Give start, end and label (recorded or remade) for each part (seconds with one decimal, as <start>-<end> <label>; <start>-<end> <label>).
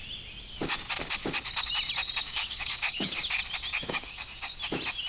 0.0-2.2 recorded; 2.2-3.2 remade; 3.2-3.8 recorded; 3.8-4.5 remade; 4.5-5.1 recorded